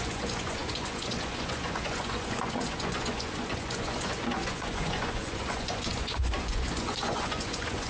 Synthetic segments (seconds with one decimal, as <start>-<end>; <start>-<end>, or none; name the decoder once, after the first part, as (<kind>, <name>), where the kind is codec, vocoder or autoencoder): 0.0-7.9 (vocoder, Vocos)